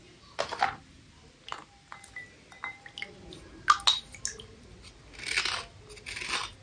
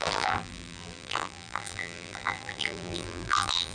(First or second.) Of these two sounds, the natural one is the first